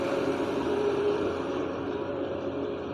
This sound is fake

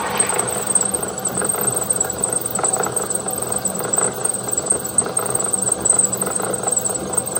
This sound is real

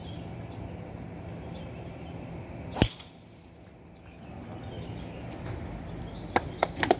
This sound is real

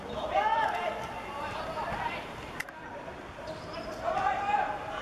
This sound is fake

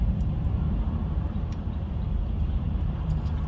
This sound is fake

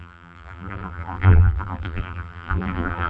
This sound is fake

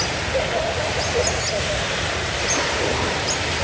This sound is real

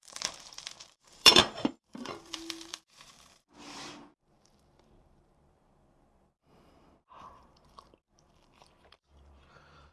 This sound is fake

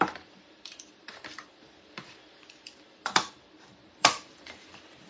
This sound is fake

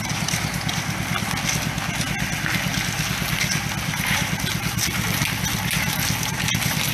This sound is real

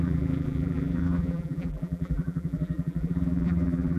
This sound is fake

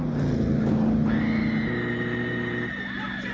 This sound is real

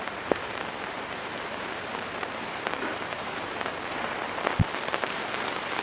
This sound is fake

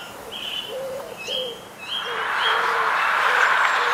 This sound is fake